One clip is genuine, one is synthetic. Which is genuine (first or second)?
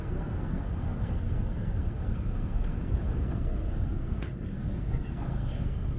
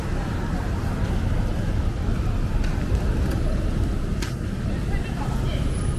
second